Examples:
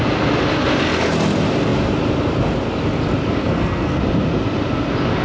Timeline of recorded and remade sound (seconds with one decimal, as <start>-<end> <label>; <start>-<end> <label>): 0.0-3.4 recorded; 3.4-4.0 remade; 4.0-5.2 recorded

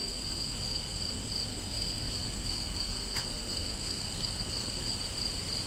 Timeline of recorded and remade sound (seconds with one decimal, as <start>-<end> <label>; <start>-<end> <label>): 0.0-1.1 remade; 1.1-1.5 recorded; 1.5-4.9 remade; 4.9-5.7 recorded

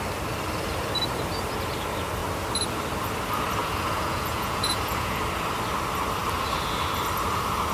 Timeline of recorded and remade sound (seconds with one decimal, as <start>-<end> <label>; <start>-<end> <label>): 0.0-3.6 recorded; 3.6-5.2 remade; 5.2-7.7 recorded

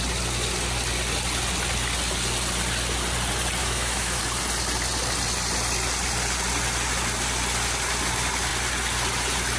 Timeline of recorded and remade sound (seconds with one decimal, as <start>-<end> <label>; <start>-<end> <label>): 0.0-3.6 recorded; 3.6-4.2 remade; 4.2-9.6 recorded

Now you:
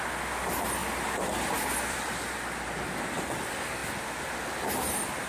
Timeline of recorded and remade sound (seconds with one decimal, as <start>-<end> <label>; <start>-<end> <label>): 0.0-0.8 recorded; 0.8-3.4 remade; 3.4-5.3 recorded

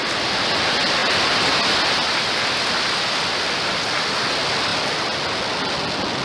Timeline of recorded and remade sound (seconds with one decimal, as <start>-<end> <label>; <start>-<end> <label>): 0.0-6.2 recorded

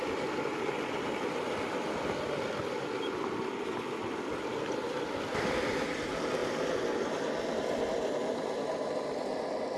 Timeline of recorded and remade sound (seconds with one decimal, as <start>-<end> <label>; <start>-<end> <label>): 0.0-9.8 recorded